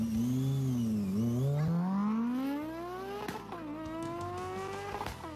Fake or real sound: real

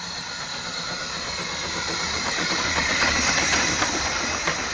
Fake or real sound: fake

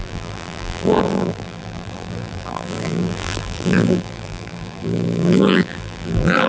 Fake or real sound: fake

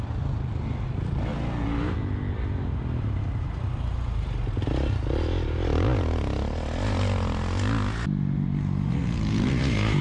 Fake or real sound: real